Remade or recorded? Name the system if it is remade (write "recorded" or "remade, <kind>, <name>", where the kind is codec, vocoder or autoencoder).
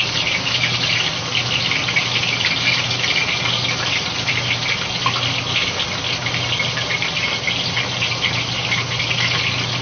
recorded